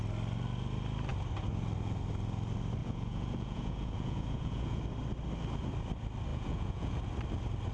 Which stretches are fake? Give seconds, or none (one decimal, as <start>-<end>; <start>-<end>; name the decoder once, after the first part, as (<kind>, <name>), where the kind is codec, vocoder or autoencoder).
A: 2.8-4.8 (vocoder, Vocos); 6.3-7.0